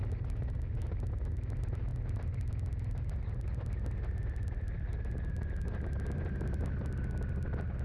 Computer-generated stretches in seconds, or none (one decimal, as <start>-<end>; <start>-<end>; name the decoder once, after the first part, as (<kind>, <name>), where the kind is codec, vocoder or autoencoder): none